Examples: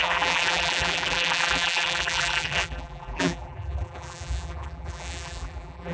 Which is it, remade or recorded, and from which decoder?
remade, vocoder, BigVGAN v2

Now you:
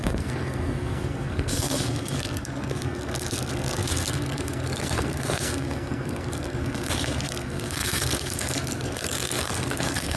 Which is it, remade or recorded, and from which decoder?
remade, codec, SNAC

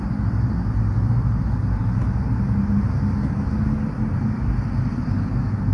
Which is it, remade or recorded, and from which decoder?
recorded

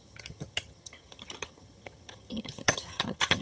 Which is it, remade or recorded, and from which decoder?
remade, vocoder, HiFi-GAN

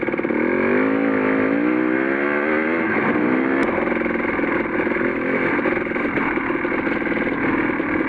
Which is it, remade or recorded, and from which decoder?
recorded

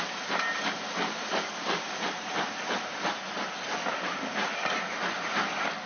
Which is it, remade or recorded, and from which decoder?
recorded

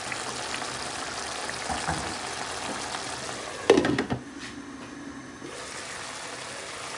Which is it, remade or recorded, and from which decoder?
recorded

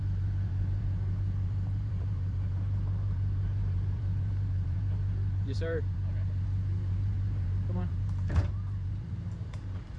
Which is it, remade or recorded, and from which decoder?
remade, vocoder, BigVGAN v2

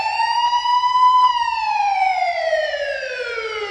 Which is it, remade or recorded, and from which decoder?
remade, vocoder, BigVGAN v2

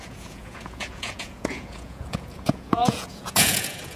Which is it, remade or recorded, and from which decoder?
remade, vocoder, Vocos